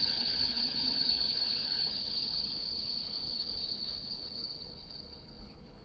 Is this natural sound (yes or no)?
no